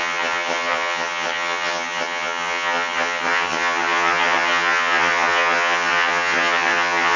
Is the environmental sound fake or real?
fake